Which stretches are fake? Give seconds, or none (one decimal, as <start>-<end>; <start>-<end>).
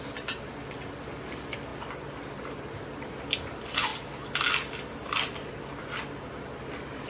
none